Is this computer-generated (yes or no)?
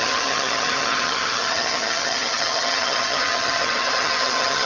yes